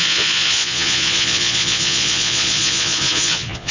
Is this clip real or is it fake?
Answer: fake